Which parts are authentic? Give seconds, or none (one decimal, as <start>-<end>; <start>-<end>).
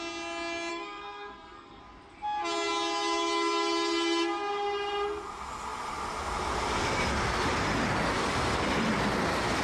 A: 0.0-0.7; 1.8-9.6